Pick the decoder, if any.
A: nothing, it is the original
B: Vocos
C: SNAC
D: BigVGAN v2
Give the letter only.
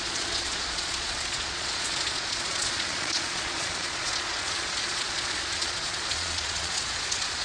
B